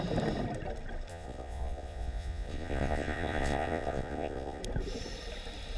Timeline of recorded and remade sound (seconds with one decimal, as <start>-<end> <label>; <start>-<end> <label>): 0.0-1.1 recorded; 1.1-4.6 remade; 4.6-5.8 recorded